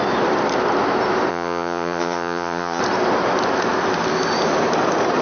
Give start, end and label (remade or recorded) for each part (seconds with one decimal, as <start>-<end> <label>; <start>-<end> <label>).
0.0-1.3 recorded; 1.3-2.8 remade; 2.8-5.2 recorded